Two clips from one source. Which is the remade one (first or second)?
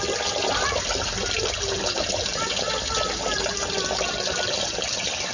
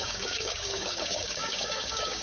second